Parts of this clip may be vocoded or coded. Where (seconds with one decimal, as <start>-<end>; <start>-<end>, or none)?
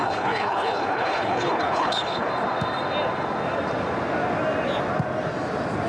0.0-2.3